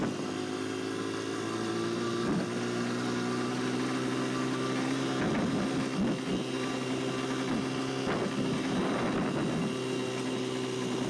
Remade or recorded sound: recorded